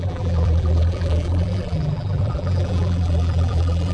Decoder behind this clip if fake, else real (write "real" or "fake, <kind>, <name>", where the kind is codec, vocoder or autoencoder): fake, vocoder, BigVGAN v2